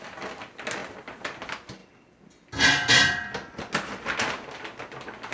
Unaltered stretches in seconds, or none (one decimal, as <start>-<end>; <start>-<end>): 0.0-5.3